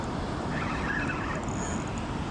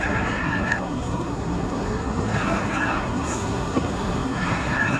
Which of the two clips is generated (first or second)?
second